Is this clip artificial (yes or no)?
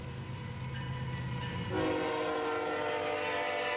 no